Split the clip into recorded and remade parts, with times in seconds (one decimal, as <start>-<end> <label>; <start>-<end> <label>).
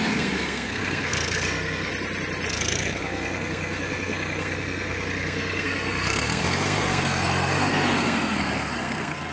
0.0-1.9 remade; 1.9-2.5 recorded; 2.5-9.3 remade